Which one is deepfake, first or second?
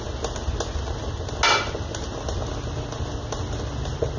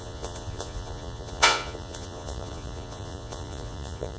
second